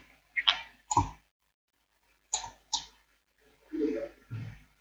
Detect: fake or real fake